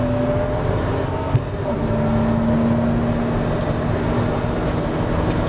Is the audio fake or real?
real